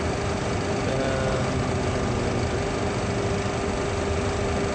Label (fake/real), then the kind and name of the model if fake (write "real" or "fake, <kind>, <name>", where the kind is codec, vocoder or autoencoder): real